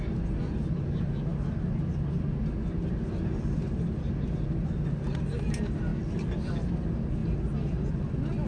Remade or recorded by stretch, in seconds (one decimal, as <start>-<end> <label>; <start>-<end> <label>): 0.0-8.5 recorded